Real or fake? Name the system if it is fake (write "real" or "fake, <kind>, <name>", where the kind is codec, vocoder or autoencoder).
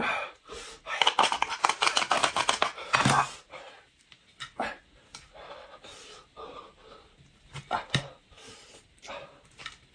real